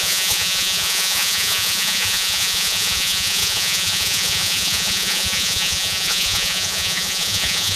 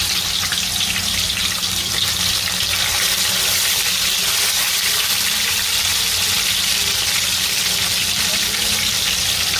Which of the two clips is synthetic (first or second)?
first